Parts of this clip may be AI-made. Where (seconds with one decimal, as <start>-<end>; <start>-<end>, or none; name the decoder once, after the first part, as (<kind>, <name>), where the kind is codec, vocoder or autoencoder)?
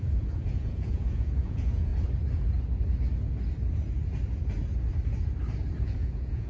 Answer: 0.0-1.9 (vocoder, Vocos); 5.8-6.5